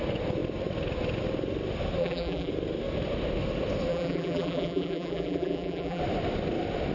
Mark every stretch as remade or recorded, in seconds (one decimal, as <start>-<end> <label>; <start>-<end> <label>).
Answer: 0.0-2.0 recorded; 2.0-2.5 remade; 2.5-3.9 recorded; 3.9-6.0 remade; 6.0-6.9 recorded